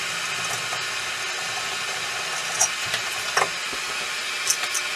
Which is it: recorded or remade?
recorded